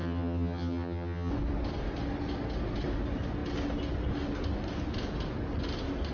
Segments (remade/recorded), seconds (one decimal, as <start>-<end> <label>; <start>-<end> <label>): 0.0-1.3 remade; 1.3-6.1 recorded